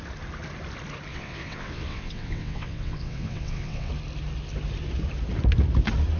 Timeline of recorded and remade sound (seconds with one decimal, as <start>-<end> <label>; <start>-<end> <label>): 0.0-1.1 recorded; 1.1-3.9 remade; 3.9-6.2 recorded